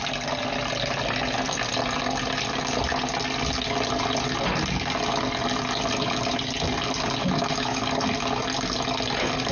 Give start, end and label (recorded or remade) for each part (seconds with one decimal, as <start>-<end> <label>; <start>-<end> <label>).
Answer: 0.0-7.2 recorded; 7.2-7.8 remade; 7.8-9.5 recorded

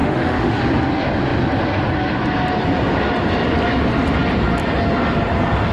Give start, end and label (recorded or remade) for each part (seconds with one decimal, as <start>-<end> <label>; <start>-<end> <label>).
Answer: 0.0-0.6 remade; 0.6-5.7 recorded

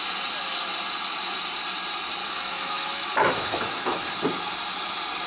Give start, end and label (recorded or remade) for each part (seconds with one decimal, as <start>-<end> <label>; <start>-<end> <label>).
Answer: 0.0-2.2 recorded; 2.2-4.2 remade; 4.2-5.3 recorded

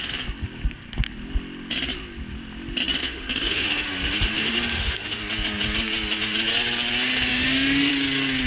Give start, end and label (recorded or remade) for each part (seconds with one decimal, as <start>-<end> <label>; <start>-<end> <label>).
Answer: 0.0-3.0 recorded; 3.0-5.2 remade; 5.2-7.3 recorded; 7.3-7.9 remade; 7.9-8.5 recorded

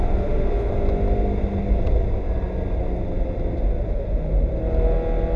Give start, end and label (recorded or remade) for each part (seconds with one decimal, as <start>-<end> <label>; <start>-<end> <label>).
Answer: 0.0-0.7 remade; 0.7-3.9 recorded; 3.9-4.5 remade; 4.5-5.4 recorded

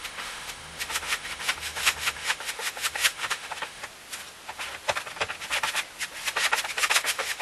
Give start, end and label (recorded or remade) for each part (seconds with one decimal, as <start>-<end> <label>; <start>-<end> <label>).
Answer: 0.0-3.8 remade; 3.8-6.8 recorded; 6.8-7.4 remade

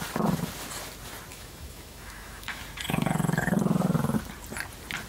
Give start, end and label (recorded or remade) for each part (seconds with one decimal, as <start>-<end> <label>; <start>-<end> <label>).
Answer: 0.0-1.3 recorded; 1.3-2.6 remade; 2.6-5.1 recorded